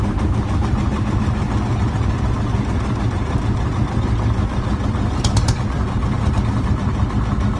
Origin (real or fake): real